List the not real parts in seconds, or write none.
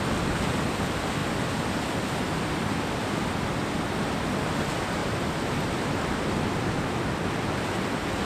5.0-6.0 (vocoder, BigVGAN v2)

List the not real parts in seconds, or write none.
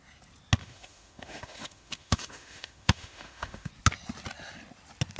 0.6-3.7 (autoencoder, DAC-VAE)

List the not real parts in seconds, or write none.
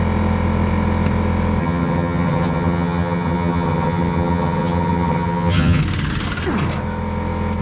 1.6-5.8 (vocoder, HiFi-GAN)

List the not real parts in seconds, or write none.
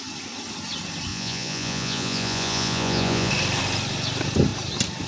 1.1-3.3 (vocoder, Vocos)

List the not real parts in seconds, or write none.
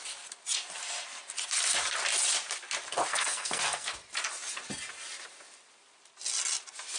3.1-3.9 (codec, SNAC)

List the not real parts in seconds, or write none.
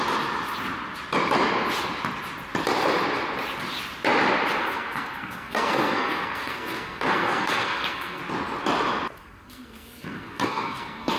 4.6-8.2 (codec, SNAC); 9.2-11.2